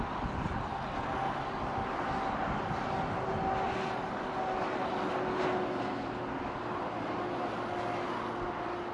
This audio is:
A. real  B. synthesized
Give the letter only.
A